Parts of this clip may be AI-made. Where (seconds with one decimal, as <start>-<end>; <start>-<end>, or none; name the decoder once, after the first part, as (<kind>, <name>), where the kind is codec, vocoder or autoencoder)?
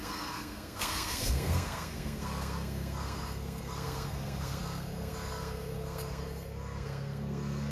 0.0-7.7 (codec, SNAC)